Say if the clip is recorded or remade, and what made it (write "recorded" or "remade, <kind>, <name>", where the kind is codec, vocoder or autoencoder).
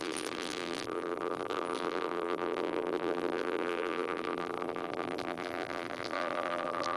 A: remade, vocoder, BigVGAN v2